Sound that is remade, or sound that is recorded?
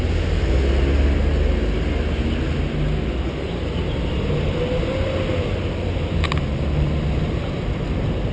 recorded